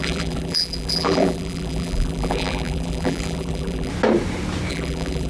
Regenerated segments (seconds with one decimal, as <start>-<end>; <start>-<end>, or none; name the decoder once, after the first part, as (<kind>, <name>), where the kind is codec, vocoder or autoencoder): 0.0-3.9 (vocoder, BigVGAN v2); 4.7-5.3